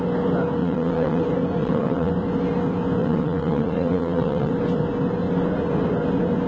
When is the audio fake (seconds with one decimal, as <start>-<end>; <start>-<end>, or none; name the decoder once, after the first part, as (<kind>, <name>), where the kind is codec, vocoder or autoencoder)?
0.6-1.2 (vocoder, WaveNeXt); 1.6-2.1; 3.0-4.5